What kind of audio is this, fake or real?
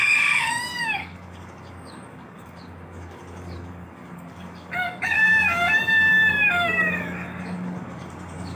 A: fake